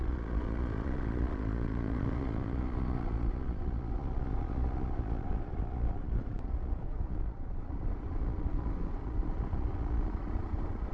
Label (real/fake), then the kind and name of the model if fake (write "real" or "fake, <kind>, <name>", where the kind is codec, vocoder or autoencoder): fake, vocoder, Vocos